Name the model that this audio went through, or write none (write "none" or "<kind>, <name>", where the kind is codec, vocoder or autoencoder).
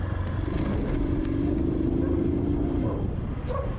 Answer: none